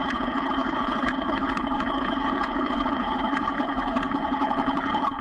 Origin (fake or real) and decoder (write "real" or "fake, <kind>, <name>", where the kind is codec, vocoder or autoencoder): fake, codec, HILCodec